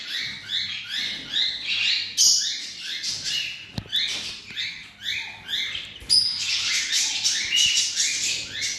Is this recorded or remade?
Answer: recorded